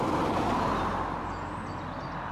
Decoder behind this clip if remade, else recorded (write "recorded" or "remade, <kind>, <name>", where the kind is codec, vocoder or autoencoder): recorded